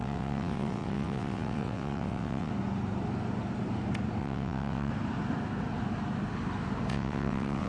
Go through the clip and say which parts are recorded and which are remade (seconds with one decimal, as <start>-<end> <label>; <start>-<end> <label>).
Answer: 0.0-2.5 remade; 2.5-4.2 recorded; 4.2-4.9 remade; 4.9-6.9 recorded; 6.9-7.7 remade